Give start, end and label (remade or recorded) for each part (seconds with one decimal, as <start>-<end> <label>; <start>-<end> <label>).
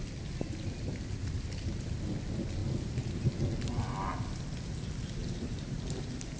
0.0-2.6 recorded; 2.6-3.4 remade; 3.4-5.2 recorded; 5.2-5.8 remade; 5.8-6.4 recorded